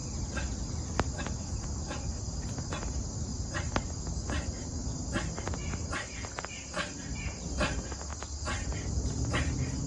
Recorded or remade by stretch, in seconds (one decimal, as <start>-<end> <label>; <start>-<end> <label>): 0.0-3.3 recorded; 3.3-4.0 remade; 4.0-8.1 recorded; 8.1-8.9 remade; 8.9-9.9 recorded